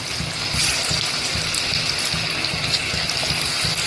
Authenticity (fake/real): real